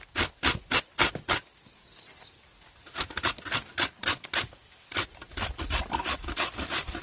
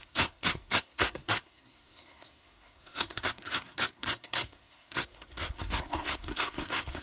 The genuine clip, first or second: first